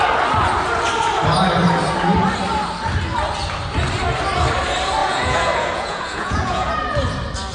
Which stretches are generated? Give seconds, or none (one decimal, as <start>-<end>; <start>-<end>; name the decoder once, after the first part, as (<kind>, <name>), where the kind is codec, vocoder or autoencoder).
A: 5.0-6.7 (vocoder, Vocos)